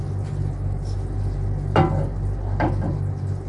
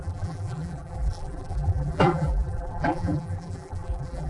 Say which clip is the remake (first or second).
second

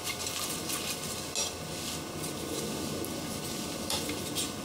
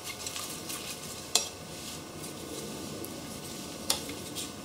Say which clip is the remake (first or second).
second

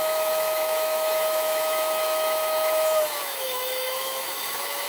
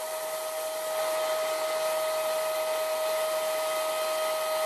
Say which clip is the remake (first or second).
first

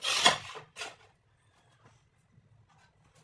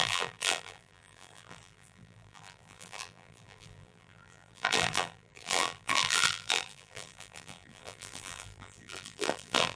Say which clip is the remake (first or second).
second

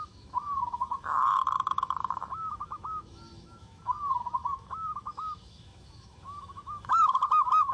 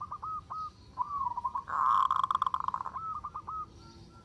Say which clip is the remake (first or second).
first